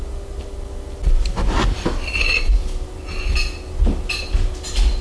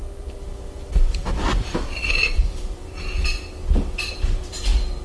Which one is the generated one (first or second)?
second